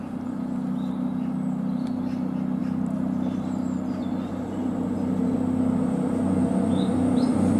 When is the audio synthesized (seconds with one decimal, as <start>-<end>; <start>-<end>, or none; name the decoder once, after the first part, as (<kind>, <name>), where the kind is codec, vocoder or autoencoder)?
2.6-4.0 (vocoder, BigVGAN v2)